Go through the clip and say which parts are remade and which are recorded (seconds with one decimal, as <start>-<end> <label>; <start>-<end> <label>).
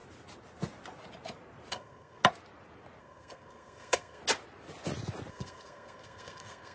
0.0-1.7 recorded; 1.7-2.2 remade; 2.2-3.0 recorded; 3.0-4.2 remade; 4.2-5.3 recorded; 5.3-6.7 remade